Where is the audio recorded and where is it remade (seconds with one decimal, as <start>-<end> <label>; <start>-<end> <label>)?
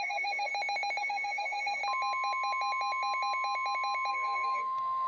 0.0-0.5 remade; 0.5-1.0 recorded; 1.0-1.8 remade; 1.8-4.1 recorded; 4.1-5.1 remade